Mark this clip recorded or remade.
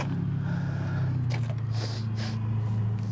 recorded